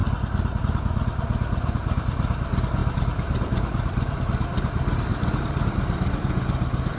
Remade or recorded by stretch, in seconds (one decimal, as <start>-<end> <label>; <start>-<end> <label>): 0.0-2.8 recorded; 2.8-4.2 remade; 4.2-5.1 recorded; 5.1-6.2 remade; 6.2-7.0 recorded